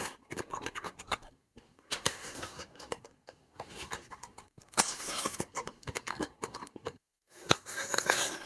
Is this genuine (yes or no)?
no